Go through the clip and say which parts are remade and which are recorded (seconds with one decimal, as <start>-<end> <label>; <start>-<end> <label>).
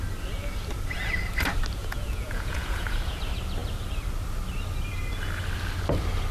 0.0-1.8 recorded; 1.8-3.2 remade; 3.2-6.3 recorded